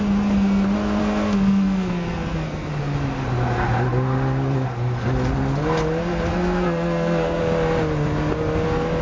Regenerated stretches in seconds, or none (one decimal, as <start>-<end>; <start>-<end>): 1.0-2.7; 6.3-7.4